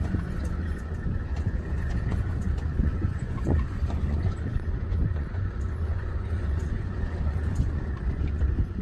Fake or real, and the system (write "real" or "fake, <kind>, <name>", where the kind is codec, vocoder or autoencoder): fake, vocoder, Vocos